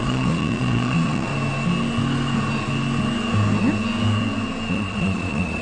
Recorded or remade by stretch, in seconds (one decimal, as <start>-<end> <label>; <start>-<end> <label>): 0.0-1.3 remade; 1.3-4.7 recorded; 4.7-5.6 remade